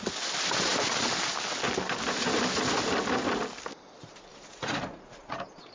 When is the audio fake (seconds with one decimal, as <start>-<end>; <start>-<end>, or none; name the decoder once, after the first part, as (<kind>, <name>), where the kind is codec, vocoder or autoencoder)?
4.3-5.7 (vocoder, Vocos)